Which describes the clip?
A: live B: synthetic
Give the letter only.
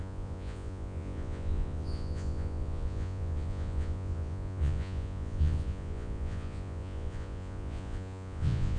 B